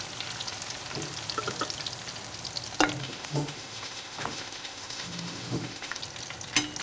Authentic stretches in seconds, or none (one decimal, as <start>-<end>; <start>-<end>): 0.0-3.0; 6.0-6.8